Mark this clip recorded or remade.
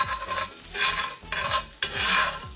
recorded